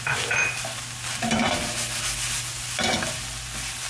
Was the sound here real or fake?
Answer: real